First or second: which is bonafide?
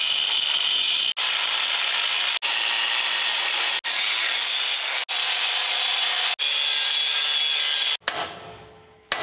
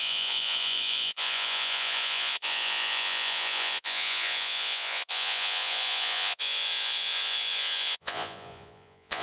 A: first